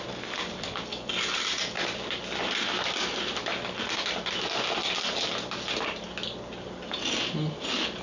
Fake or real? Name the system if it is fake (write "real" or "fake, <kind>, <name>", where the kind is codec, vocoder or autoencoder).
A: real